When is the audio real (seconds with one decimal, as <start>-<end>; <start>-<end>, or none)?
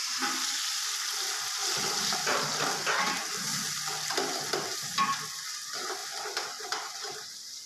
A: 0.0-6.0